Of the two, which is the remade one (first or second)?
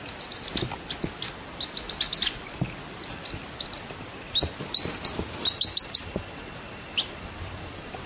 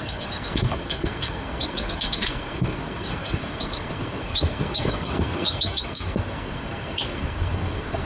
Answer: second